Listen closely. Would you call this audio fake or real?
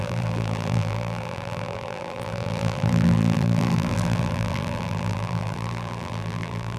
fake